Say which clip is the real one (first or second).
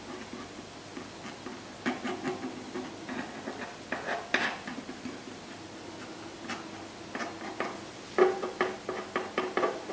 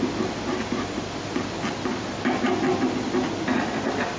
first